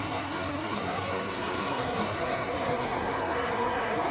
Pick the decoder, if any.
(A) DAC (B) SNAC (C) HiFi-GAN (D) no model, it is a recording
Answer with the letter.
B